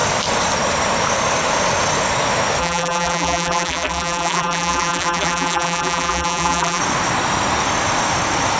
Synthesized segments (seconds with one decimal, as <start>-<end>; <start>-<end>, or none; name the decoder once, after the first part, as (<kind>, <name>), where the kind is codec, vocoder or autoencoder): 2.6-6.8 (vocoder, BigVGAN v2)

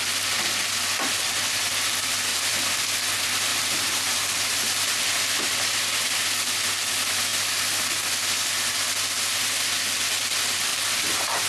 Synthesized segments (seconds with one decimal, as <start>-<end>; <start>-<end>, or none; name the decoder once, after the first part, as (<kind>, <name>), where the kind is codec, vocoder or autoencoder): 2.3-2.9 (vocoder, BigVGAN v2); 3.5-5.9; 10.7-11.5

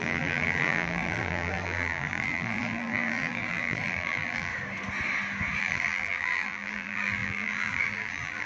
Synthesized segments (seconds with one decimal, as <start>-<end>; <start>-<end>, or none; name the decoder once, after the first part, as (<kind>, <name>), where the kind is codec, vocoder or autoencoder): 0.0-4.5 (vocoder, BigVGAN v2); 5.6-8.5

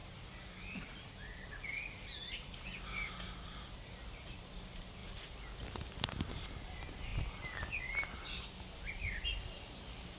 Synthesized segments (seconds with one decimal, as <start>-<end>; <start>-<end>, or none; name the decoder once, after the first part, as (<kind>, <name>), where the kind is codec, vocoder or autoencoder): 0.0-3.8 (vocoder, BigVGAN v2); 5.0-6.5

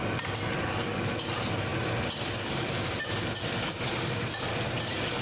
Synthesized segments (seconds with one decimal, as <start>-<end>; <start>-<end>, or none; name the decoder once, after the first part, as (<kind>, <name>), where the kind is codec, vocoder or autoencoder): none